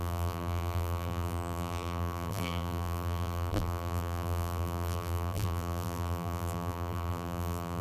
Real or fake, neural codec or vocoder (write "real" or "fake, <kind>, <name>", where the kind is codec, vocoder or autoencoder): fake, vocoder, BigVGAN v2